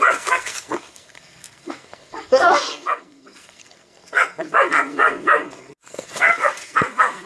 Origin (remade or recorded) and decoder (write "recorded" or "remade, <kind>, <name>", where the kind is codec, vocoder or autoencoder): remade, codec, SNAC